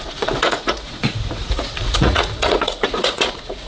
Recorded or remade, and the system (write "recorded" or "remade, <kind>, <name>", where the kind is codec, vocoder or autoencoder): remade, vocoder, Vocos